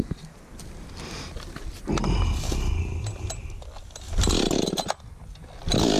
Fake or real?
real